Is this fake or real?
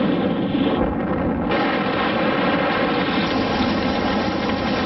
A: real